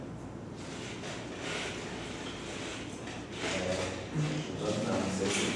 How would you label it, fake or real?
real